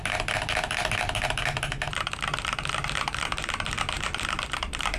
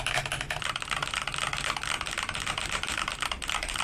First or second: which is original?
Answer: second